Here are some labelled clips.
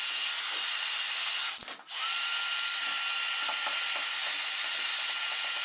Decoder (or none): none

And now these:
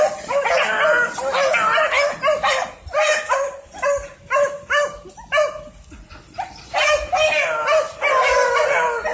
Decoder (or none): none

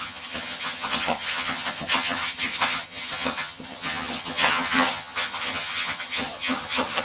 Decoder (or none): vocoder, HiFi-GAN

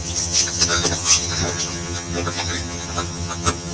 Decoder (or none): vocoder, HiFi-GAN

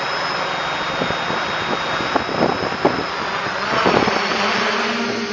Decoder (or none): none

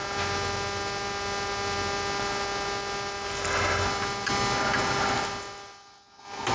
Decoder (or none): none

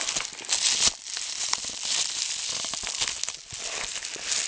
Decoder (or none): none